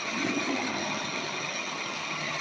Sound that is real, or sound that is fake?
fake